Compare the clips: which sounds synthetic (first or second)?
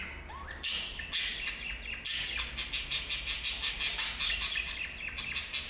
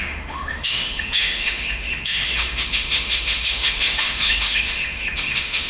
second